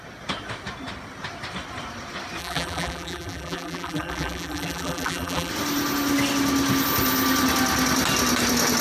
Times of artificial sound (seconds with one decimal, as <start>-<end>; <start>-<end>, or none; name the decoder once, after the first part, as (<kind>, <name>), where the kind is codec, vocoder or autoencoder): 2.4-5.5 (vocoder, BigVGAN v2)